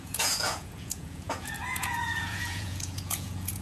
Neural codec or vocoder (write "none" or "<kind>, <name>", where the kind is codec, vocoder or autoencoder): vocoder, Vocos